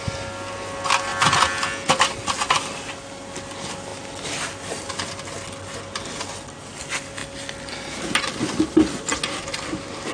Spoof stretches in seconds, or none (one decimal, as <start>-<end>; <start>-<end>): none